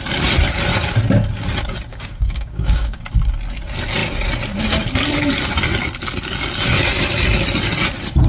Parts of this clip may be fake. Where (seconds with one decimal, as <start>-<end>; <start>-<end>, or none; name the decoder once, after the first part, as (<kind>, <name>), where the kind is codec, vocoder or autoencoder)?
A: 1.9-3.0 (codec, DAC)